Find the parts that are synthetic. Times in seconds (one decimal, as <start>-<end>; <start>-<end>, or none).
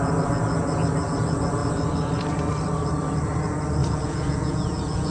3.8-5.1